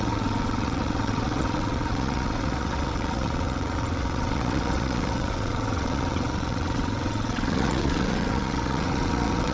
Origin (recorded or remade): remade